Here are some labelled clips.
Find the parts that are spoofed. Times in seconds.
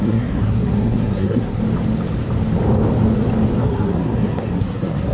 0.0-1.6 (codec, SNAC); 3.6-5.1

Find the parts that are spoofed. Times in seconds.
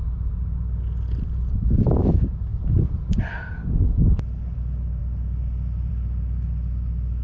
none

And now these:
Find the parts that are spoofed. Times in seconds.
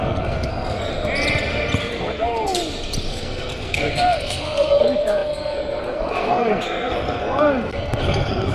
0.0-0.9 (codec, SNAC); 1.8-2.6; 3.1-8.5